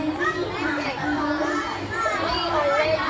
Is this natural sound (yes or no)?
yes